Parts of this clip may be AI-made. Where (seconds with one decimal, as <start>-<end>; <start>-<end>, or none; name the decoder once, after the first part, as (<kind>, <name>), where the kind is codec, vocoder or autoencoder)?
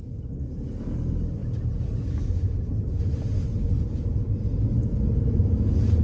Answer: none